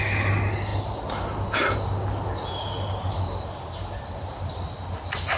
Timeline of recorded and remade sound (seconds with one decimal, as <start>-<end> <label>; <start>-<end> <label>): 0.0-5.4 recorded